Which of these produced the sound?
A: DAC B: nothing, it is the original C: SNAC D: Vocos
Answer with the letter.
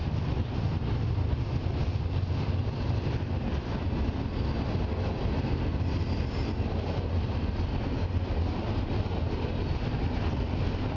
B